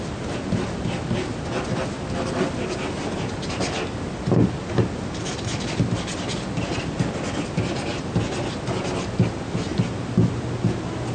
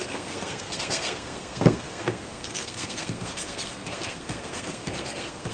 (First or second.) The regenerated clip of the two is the second